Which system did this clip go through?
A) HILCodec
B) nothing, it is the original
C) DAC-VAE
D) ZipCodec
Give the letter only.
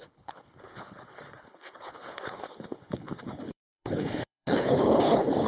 A